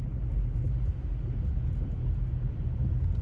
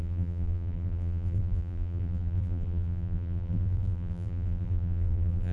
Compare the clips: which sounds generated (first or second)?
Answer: second